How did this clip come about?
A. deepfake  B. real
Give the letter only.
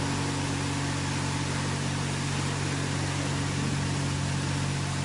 B